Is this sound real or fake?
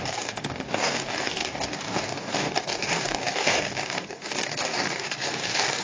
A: fake